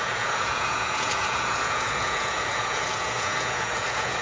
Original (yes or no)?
no